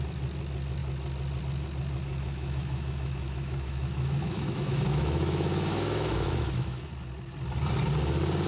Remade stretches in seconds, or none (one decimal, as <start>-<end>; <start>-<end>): 2.1-6.9